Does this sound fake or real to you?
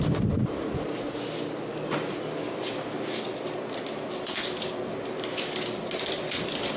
real